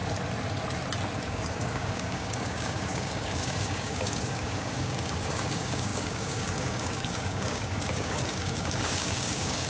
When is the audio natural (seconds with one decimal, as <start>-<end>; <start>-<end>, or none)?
0.0-1.2